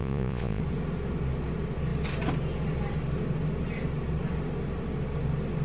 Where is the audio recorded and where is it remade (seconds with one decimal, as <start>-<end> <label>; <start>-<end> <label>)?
0.0-0.6 remade; 0.6-5.6 recorded